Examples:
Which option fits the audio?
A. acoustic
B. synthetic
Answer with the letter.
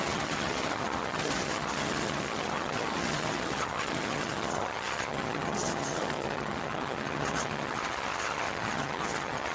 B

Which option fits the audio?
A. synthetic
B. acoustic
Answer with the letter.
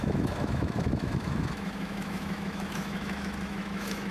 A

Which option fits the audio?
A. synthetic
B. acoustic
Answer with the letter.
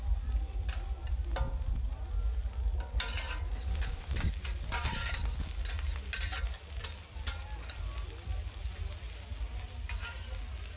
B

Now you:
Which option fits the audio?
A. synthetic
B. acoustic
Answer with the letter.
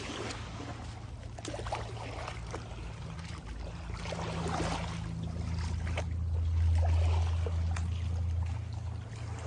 B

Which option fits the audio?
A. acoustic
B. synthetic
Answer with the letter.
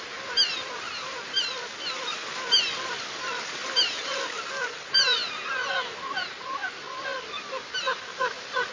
A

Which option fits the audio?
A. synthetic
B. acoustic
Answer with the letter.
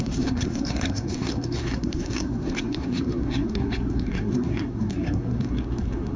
A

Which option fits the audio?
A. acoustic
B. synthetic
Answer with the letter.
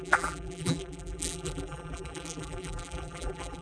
B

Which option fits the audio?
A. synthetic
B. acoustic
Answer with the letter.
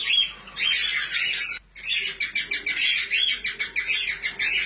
B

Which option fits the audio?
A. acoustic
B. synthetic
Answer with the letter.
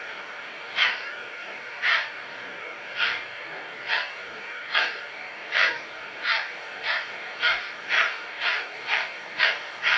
B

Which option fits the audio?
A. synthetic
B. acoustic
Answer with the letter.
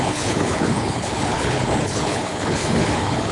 A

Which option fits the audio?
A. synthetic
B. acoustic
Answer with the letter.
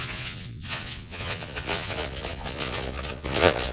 A